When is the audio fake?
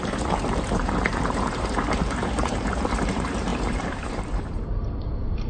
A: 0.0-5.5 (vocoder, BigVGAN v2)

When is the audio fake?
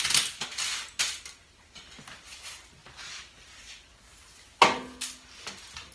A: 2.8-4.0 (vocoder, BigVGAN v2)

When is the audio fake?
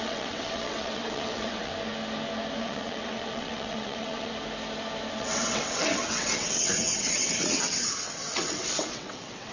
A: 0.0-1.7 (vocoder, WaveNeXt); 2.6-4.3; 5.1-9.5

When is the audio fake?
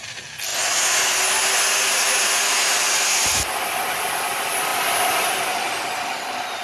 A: none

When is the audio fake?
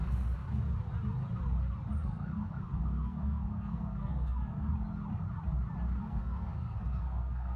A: 0.0-0.4 (codec, SNAC); 2.0-4.7; 6.0-7.6